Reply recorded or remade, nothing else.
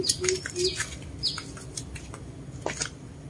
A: recorded